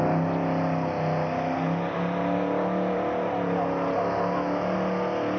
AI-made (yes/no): no